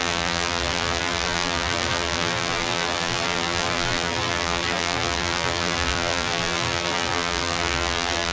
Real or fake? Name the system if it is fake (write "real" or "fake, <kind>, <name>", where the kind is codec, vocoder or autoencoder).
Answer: fake, vocoder, BigVGAN v2